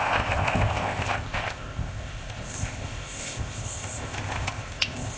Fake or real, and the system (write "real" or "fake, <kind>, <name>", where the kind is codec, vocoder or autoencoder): fake, codec, ZipCodec